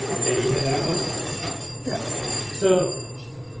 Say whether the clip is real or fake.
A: fake